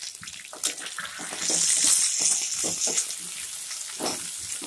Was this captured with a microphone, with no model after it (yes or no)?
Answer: yes